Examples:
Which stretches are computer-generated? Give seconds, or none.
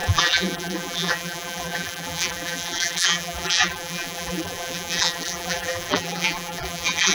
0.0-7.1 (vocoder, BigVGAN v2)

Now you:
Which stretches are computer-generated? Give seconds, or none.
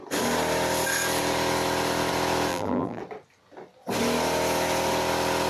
2.5-3.0 (vocoder, BigVGAN v2)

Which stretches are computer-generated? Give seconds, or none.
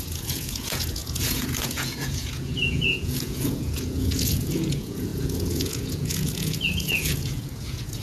0.0-8.0 (vocoder, Vocos)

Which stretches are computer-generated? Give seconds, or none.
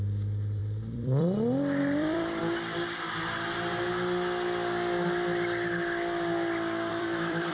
0.0-2.4 (vocoder, BigVGAN v2); 6.9-7.5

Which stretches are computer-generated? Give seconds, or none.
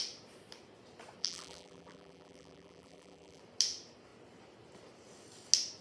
1.2-3.4 (vocoder, BigVGAN v2)